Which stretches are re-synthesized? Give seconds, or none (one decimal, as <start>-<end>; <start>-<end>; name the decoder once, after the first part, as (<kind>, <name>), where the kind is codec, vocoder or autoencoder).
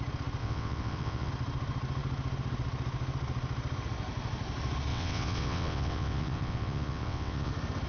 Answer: 0.4-1.3 (vocoder, WaveNeXt); 4.9-7.5